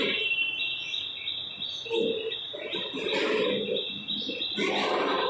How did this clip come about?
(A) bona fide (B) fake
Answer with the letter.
A